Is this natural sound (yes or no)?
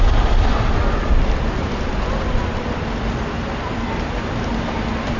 yes